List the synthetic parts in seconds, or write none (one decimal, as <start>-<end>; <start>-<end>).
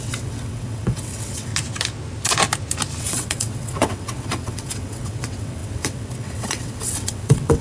0.0-1.5; 3.0-7.6